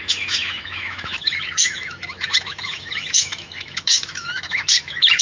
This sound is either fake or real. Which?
fake